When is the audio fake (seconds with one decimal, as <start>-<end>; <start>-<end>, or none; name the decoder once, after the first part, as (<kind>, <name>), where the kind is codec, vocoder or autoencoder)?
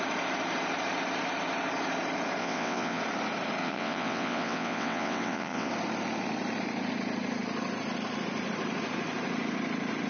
2.4-3.0 (vocoder, WaveNeXt); 3.6-5.7